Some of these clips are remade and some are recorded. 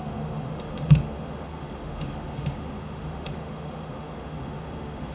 remade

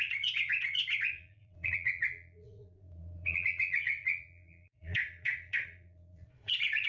remade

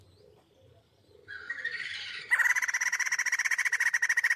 remade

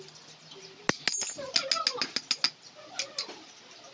recorded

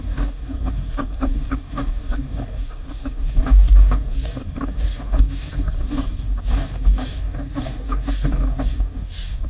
remade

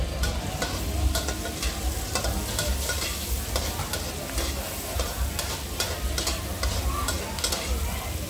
recorded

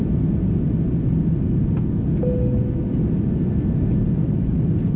recorded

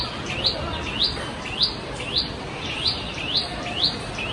recorded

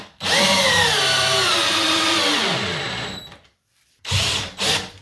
remade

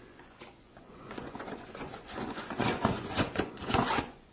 remade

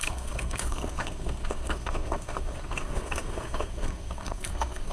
remade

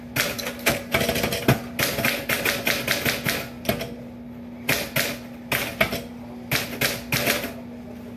recorded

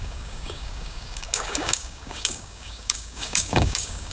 remade